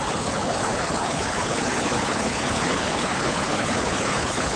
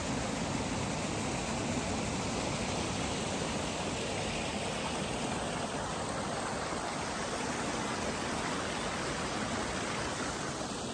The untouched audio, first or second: second